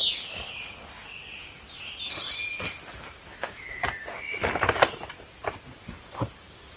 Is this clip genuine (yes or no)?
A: yes